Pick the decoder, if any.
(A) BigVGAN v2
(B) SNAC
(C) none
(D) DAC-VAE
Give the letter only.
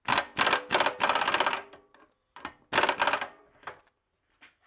C